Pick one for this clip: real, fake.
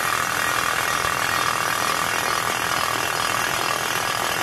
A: real